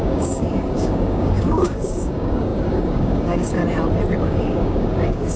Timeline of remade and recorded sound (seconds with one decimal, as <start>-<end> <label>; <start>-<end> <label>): 0.0-3.6 remade; 3.6-4.2 recorded; 4.2-5.4 remade